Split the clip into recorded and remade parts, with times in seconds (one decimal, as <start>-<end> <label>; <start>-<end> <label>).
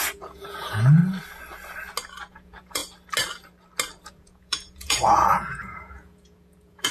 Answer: 0.0-1.0 remade; 1.0-2.3 recorded; 2.3-2.8 remade; 2.8-4.1 recorded; 4.1-6.9 remade